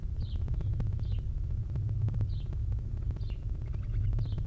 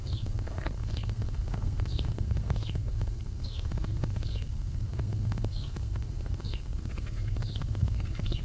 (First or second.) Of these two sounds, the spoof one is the second